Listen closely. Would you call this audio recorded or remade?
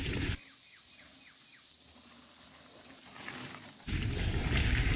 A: recorded